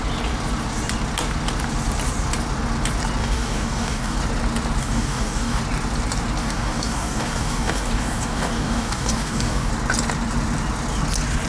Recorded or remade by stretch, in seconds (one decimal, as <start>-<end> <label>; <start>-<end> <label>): 0.0-3.2 recorded; 3.2-4.2 remade; 4.2-4.8 recorded; 4.8-5.6 remade; 5.6-6.4 recorded; 6.4-9.7 remade; 9.7-11.5 recorded